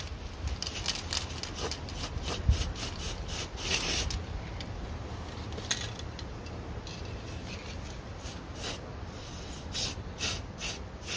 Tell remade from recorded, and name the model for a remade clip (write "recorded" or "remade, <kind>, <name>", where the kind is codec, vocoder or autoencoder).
recorded